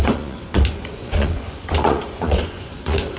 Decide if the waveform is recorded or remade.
remade